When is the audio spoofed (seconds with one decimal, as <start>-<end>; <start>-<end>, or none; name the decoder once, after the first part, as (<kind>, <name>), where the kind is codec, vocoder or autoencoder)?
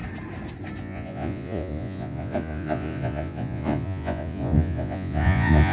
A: 0.8-5.7 (vocoder, Vocos)